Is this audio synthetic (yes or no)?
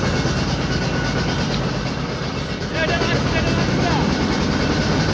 no